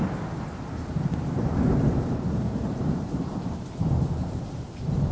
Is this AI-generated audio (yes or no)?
yes